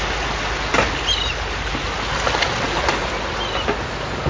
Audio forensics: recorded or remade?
recorded